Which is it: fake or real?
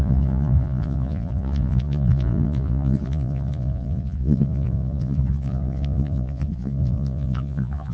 fake